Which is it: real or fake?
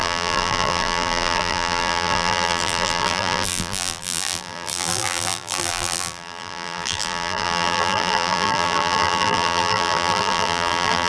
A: fake